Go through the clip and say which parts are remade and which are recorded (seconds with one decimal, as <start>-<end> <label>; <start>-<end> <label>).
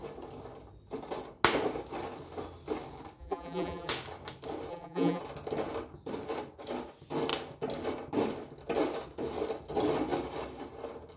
0.0-3.2 recorded; 3.2-3.9 remade; 3.9-4.7 recorded; 4.7-5.2 remade; 5.2-11.2 recorded